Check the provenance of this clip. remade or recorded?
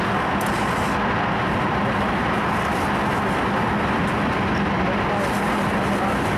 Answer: recorded